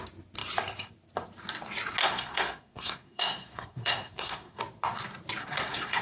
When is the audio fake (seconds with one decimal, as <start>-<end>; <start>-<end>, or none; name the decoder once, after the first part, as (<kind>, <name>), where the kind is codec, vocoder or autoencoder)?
2.0-4.6 (codec, SNAC); 5.4-6.0

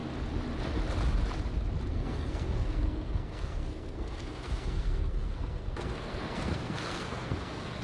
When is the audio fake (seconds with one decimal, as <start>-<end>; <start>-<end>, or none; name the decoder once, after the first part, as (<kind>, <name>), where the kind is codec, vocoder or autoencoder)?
1.9-7.8 (codec, SNAC)